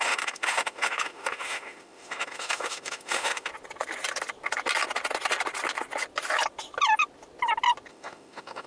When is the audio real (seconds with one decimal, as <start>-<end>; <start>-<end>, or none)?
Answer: 3.5-7.9